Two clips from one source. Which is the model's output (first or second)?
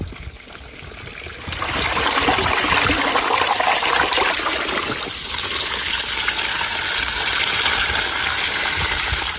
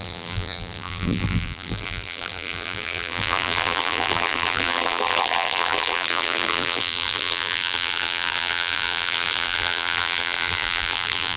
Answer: second